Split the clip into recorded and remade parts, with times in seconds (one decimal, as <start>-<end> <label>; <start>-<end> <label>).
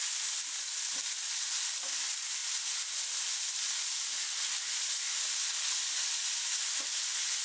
0.0-7.4 recorded